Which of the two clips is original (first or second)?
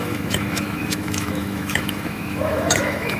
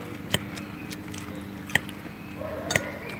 second